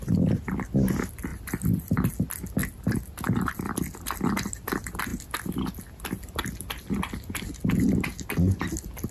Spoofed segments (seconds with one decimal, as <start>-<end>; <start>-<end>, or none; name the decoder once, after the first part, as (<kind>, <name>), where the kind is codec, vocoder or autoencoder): none